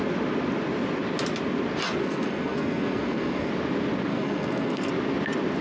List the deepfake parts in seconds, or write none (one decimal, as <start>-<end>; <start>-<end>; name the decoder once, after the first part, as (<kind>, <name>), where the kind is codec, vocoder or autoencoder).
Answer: 2.0-3.5 (codec, SNAC); 4.1-4.9